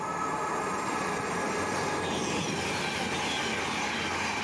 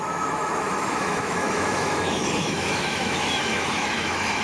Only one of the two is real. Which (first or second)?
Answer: first